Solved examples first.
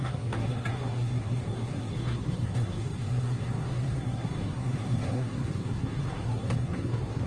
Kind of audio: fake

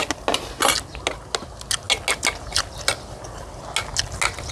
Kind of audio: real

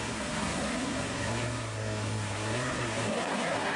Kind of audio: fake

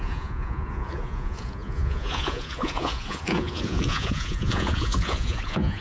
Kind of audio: fake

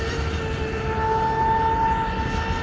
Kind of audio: real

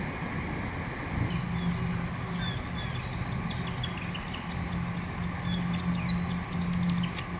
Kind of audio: real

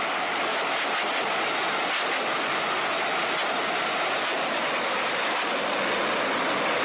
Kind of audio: real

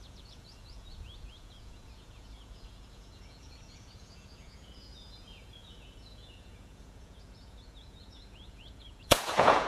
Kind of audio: fake